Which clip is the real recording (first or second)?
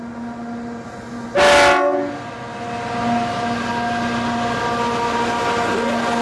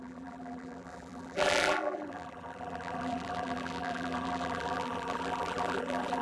first